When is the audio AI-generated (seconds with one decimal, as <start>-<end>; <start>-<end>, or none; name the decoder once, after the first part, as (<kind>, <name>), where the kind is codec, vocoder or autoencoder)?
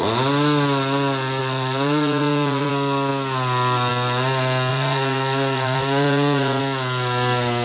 1.4-2.7 (vocoder, Vocos); 4.7-6.6